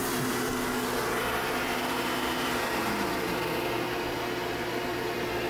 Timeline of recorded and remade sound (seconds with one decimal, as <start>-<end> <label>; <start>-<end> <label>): 0.0-0.5 remade; 0.5-5.5 recorded